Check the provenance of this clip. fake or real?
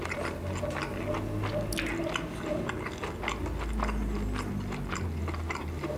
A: real